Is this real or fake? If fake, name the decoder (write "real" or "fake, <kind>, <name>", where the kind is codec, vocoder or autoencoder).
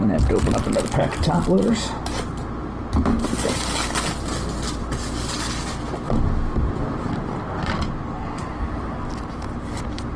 real